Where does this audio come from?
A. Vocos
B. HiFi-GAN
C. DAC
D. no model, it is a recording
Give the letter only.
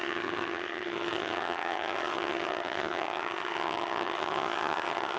B